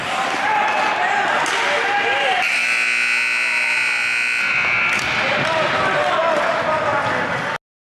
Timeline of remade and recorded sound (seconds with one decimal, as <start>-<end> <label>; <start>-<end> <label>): 0.0-7.9 recorded

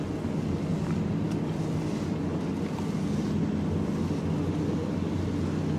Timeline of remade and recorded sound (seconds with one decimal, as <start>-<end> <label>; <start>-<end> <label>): 0.0-5.8 recorded

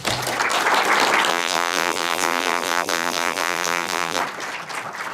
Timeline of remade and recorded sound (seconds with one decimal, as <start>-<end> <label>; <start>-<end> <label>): 0.0-1.3 recorded; 1.3-4.2 remade; 4.2-5.1 recorded

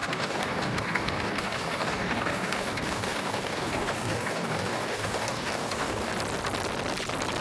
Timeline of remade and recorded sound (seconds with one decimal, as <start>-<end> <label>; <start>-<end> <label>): 0.0-6.1 remade; 6.1-7.4 recorded

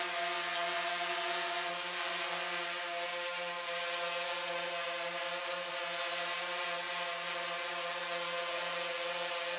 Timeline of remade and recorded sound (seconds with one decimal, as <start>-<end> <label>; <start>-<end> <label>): 0.0-9.6 recorded

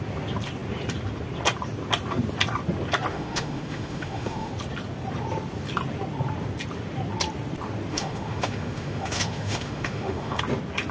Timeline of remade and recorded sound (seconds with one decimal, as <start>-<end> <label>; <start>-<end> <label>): 0.0-3.1 recorded; 3.1-4.5 remade; 4.5-7.9 recorded; 7.9-10.4 remade; 10.4-10.9 recorded

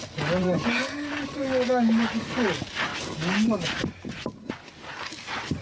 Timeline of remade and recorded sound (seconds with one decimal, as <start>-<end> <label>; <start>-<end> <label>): 0.0-0.4 recorded; 0.4-1.4 remade; 1.4-2.9 recorded; 2.9-4.5 remade; 4.5-5.6 recorded

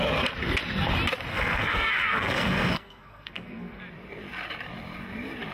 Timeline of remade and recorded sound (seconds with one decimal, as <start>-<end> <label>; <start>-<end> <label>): 0.0-1.3 recorded; 1.3-3.8 remade; 3.8-5.5 recorded